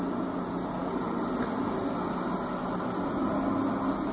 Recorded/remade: recorded